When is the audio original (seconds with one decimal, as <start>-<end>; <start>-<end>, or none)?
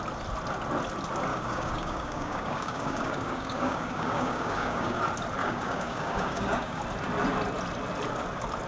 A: 0.0-1.3; 5.0-5.4; 6.8-8.7